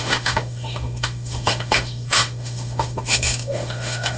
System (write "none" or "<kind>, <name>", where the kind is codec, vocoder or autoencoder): autoencoder, DAC-VAE